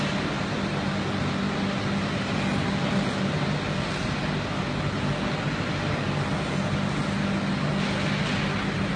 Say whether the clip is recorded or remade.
recorded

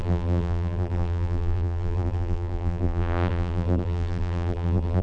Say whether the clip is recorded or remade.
remade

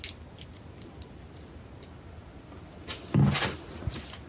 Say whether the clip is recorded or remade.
recorded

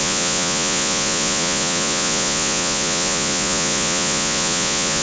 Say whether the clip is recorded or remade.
remade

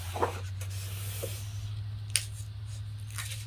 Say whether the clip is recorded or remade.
recorded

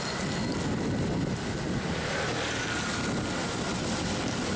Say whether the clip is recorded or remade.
recorded